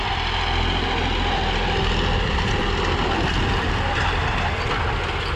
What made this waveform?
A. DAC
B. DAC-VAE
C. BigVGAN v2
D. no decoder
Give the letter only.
D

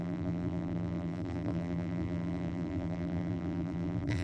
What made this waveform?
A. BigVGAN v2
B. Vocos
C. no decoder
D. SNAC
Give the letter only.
A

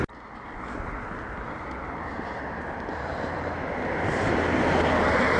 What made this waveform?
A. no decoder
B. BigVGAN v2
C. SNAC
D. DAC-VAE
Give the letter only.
A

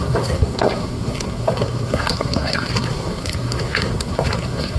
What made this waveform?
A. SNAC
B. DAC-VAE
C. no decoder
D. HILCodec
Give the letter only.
A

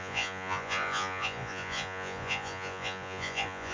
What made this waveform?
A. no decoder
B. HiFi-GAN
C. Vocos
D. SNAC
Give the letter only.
C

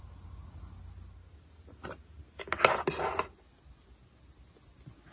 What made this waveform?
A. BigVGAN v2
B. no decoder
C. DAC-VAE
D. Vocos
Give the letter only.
B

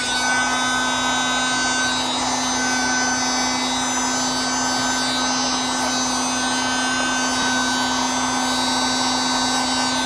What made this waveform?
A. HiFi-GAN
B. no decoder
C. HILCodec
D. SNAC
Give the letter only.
B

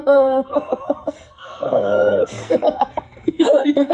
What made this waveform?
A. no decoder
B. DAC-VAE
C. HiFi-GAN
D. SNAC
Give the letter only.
D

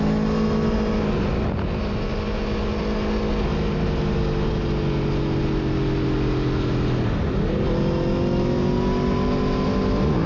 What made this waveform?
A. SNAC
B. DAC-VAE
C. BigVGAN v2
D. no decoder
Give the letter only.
D